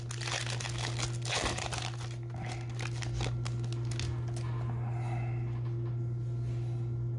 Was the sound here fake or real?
real